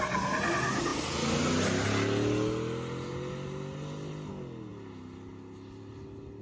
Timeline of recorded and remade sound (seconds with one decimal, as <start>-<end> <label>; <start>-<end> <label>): 0.0-6.4 recorded